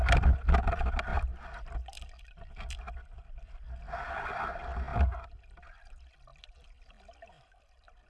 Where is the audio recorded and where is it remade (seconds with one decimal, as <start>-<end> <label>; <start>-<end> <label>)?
0.0-0.7 remade; 0.7-1.1 recorded; 1.1-2.8 remade; 2.8-8.1 recorded